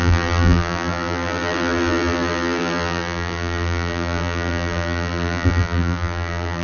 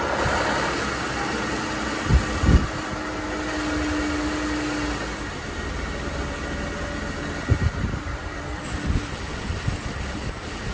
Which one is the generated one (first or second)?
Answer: first